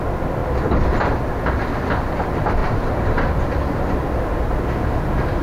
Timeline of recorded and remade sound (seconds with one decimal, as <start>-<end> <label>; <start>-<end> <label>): 0.0-2.6 recorded; 2.6-3.7 remade; 3.7-5.4 recorded